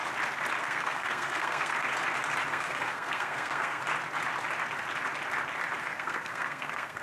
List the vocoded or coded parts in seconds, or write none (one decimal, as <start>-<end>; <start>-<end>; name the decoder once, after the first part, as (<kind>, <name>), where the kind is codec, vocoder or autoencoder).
0.6-1.7 (codec, SNAC); 2.5-3.8; 5.8-7.0